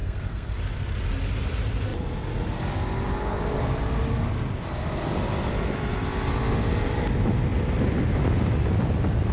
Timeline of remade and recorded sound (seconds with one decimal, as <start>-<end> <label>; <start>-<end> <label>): 0.0-0.6 remade; 0.6-9.3 recorded